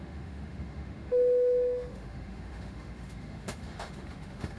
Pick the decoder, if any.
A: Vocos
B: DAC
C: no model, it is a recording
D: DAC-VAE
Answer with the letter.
D